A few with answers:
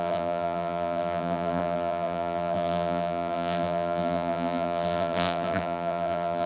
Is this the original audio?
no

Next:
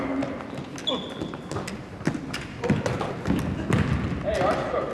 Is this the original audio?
yes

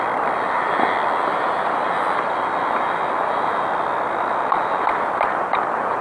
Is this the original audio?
no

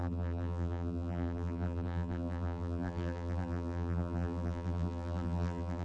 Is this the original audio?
no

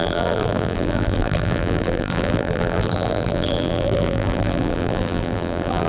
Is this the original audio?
no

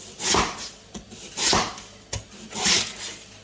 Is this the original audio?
yes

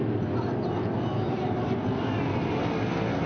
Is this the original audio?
yes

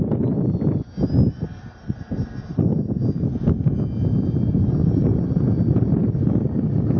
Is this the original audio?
yes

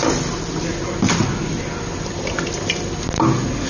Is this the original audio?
yes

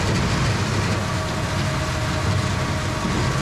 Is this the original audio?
yes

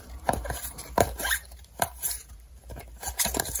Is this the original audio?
no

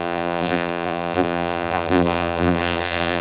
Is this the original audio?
no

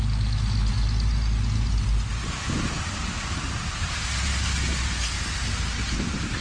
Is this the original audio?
yes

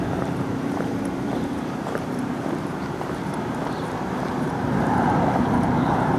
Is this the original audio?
no